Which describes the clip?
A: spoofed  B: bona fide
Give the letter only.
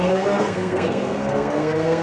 A